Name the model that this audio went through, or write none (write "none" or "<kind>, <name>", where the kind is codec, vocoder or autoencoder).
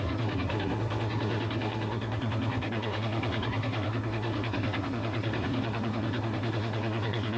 codec, SNAC